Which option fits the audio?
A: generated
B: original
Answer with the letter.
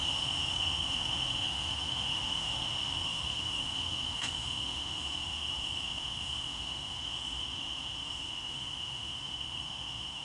A